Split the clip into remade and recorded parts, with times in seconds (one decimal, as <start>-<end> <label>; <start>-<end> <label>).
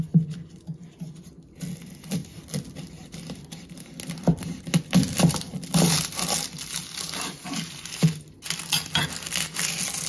0.0-10.1 recorded